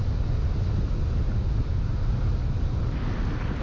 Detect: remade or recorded recorded